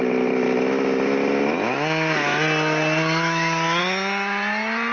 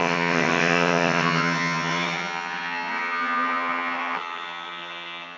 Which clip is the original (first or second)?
first